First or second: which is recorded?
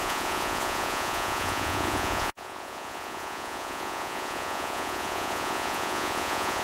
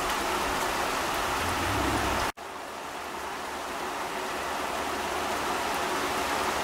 second